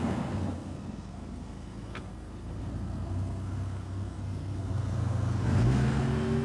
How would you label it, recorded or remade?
remade